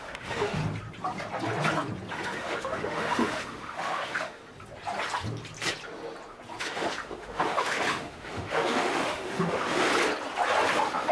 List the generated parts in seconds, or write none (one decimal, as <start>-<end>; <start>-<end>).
0.0-0.6; 2.1-4.4; 6.6-9.9; 10.7-11.1